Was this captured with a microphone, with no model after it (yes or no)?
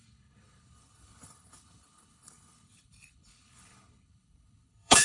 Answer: no